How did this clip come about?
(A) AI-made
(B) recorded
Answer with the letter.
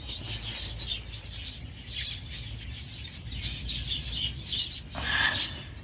B